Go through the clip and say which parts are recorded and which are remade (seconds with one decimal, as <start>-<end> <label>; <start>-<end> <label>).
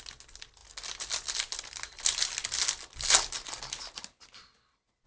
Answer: 0.0-5.1 recorded